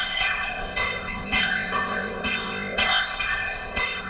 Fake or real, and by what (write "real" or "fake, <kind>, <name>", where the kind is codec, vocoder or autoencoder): fake, codec, ZipCodec